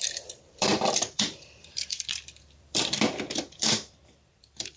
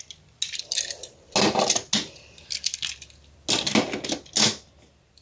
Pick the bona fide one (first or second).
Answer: second